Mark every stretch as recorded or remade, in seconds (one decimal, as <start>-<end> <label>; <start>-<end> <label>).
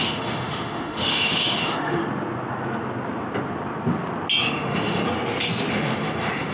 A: 0.0-2.0 remade; 2.0-4.4 recorded; 4.4-5.0 remade; 5.0-5.7 recorded; 5.7-6.5 remade